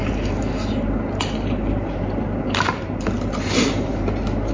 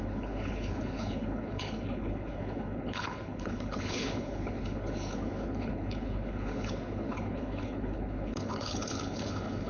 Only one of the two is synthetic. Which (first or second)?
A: second